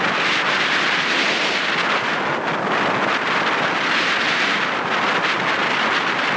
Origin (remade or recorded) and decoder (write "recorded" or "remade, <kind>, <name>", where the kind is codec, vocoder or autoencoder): recorded